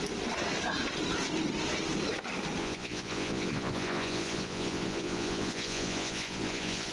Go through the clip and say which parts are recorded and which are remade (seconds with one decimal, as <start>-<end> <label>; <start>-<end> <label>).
0.0-2.6 recorded; 2.6-6.9 remade